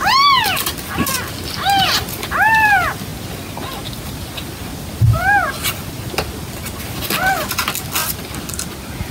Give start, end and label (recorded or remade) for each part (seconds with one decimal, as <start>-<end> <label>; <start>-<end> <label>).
0.0-9.1 recorded

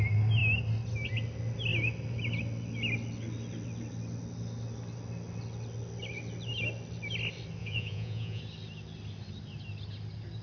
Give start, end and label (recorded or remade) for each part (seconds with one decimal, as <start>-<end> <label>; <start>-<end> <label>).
0.0-7.6 recorded; 7.6-8.4 remade; 8.4-10.4 recorded

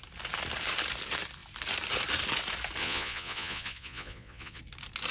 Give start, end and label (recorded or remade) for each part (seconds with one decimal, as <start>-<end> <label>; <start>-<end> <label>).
0.0-2.8 recorded; 2.8-4.6 remade; 4.6-5.1 recorded